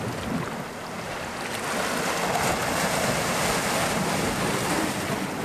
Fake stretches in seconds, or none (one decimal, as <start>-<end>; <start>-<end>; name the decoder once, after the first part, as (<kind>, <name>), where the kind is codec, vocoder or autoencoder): none